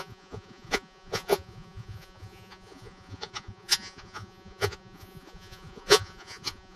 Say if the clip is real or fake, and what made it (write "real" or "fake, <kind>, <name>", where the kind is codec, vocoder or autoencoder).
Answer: fake, vocoder, Vocos